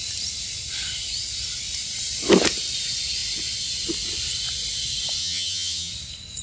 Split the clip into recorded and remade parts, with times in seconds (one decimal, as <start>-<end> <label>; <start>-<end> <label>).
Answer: 0.0-5.2 recorded; 5.2-5.9 remade; 5.9-6.4 recorded